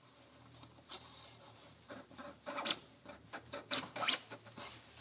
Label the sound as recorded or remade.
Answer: remade